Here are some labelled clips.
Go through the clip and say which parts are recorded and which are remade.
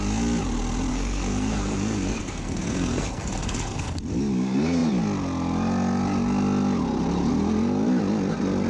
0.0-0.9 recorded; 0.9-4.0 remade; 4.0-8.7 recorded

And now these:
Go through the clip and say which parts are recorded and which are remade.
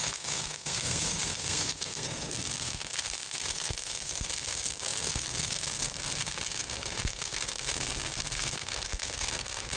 0.0-9.8 remade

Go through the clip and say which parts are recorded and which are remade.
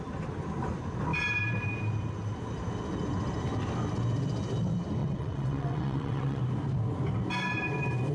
0.0-5.0 recorded; 5.0-6.4 remade; 6.4-8.1 recorded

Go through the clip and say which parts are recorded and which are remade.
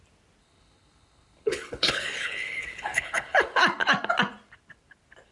0.0-0.4 recorded; 0.4-3.6 remade; 3.6-5.3 recorded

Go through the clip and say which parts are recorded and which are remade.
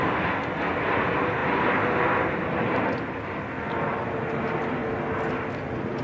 0.0-6.0 recorded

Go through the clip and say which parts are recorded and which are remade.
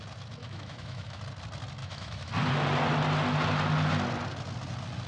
0.0-0.4 recorded; 0.4-1.2 remade; 1.2-1.8 recorded; 1.8-2.3 remade; 2.3-5.1 recorded